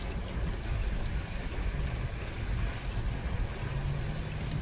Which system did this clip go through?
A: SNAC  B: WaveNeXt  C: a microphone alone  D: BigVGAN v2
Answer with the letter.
C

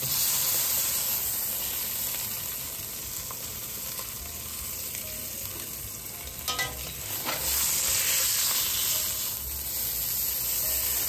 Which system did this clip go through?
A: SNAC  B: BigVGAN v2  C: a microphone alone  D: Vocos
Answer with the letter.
C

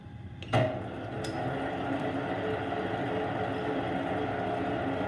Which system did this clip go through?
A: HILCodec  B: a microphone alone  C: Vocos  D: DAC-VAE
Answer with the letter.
B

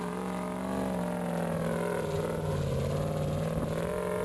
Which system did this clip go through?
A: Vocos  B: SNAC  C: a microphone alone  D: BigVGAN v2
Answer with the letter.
C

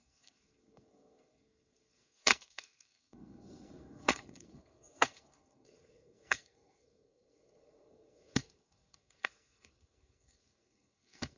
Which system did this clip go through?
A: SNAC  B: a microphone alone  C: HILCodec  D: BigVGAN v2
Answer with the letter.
A